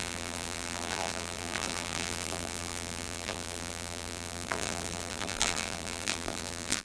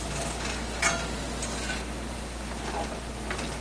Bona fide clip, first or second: second